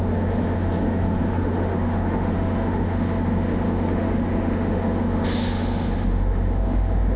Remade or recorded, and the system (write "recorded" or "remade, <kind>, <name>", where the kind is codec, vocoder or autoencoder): remade, autoencoder, DAC-VAE